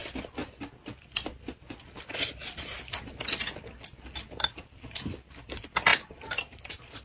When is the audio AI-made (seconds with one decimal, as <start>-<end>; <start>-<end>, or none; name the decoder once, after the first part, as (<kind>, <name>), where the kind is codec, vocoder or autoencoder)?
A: 0.4-1.8 (vocoder, BigVGAN v2)